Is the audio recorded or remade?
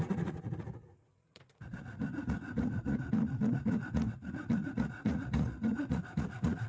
remade